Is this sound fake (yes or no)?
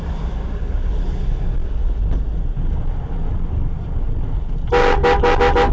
no